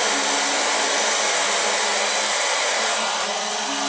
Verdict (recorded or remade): recorded